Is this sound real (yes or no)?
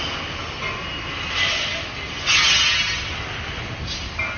yes